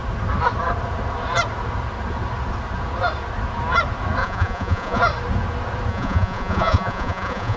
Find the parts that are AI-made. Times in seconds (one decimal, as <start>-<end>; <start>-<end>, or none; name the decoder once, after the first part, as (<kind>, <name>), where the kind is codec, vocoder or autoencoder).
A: 4.2-5.0 (vocoder, Vocos); 5.9-7.6